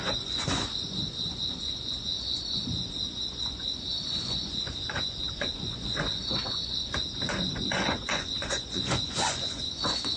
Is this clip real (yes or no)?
no